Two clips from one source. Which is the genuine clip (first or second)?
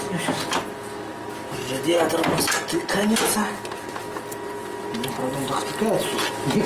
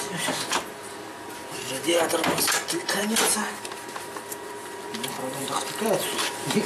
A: first